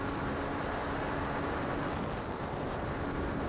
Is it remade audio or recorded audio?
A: recorded